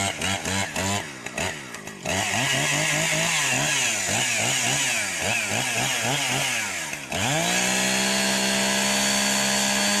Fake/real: real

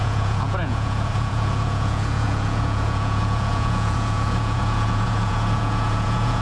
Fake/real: fake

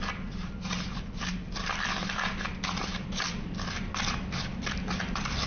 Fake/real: real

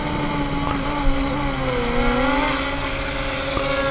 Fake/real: real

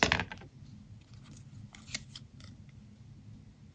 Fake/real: real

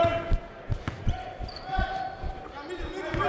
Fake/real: real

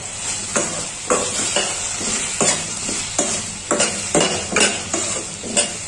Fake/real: real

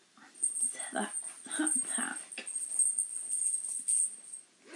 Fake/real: real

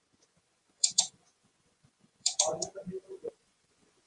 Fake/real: fake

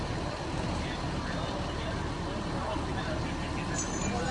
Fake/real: real